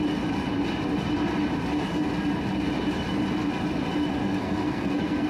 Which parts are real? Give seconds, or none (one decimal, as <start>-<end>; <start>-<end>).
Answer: 0.0-4.2